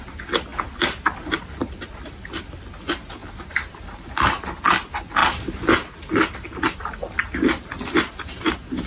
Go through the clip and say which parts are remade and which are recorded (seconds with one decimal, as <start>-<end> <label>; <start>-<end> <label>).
0.0-0.5 recorded; 0.5-2.6 remade; 2.6-5.2 recorded; 5.2-5.7 remade; 5.7-8.9 recorded